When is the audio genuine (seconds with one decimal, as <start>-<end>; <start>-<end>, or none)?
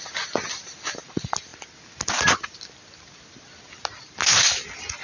0.0-5.0